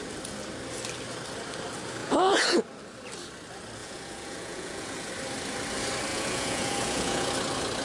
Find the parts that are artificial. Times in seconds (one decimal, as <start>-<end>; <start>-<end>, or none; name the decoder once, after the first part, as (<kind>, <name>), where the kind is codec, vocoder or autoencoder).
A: 2.0-2.6 (vocoder, Vocos); 3.8-5.1; 6.1-7.3